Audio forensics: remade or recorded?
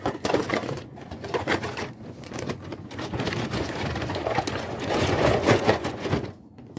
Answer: remade